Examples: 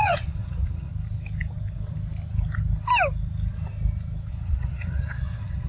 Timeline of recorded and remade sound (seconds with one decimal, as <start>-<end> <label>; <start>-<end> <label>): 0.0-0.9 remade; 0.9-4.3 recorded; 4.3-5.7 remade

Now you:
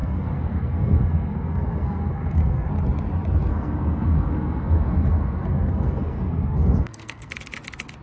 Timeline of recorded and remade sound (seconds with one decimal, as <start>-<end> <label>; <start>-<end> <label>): 0.0-2.7 remade; 2.7-3.5 recorded; 3.5-7.3 remade; 7.3-8.0 recorded

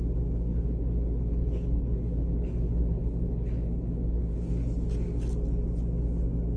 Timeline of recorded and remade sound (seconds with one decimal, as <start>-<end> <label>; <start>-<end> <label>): 0.0-0.5 recorded; 0.5-4.5 remade; 4.5-6.6 recorded

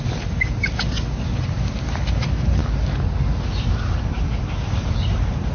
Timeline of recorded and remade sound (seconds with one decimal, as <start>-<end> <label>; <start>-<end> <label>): 0.0-5.5 recorded

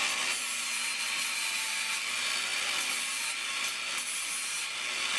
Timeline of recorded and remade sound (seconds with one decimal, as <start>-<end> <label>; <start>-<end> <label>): 0.0-5.2 recorded

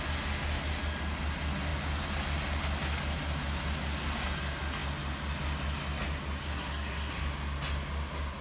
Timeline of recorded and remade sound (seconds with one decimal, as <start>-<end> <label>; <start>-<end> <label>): 0.0-6.4 recorded; 6.4-7.2 remade; 7.2-8.4 recorded

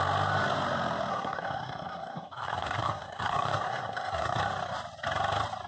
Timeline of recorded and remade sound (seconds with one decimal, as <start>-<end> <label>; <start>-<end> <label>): 0.0-1.1 recorded; 1.1-4.4 remade; 4.4-5.7 recorded

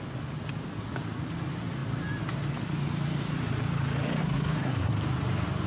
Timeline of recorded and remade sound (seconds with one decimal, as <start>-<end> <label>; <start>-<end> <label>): 0.0-4.2 recorded; 4.2-4.9 remade; 4.9-5.7 recorded